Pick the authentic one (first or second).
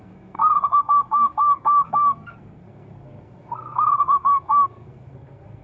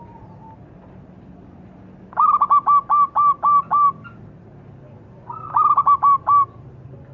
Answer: second